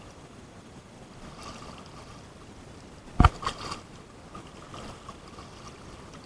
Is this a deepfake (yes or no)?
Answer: no